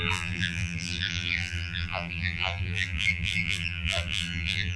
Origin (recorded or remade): remade